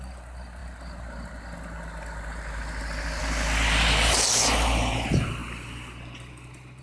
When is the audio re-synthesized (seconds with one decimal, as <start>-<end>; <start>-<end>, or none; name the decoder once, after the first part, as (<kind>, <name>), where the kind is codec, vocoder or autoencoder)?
none